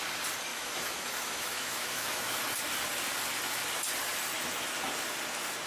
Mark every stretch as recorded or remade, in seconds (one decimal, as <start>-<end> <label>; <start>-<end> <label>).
0.0-0.5 recorded; 0.5-2.4 remade; 2.4-5.7 recorded